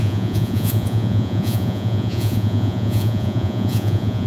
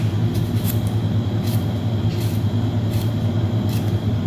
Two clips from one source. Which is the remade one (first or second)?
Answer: first